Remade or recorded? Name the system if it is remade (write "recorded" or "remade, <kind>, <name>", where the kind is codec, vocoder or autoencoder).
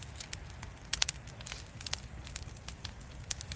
recorded